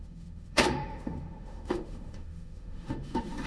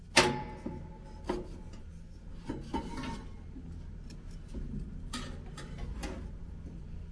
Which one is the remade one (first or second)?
first